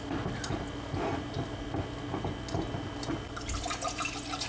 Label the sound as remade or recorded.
recorded